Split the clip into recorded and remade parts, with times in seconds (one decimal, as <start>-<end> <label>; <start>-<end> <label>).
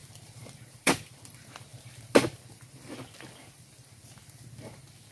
0.0-1.1 remade; 1.1-5.1 recorded